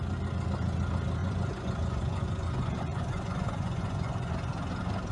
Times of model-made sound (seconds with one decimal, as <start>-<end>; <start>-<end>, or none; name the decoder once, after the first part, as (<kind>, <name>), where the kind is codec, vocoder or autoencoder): 1.2-4.3 (vocoder, Vocos)